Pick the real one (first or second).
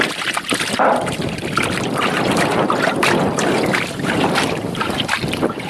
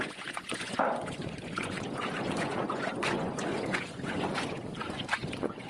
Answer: first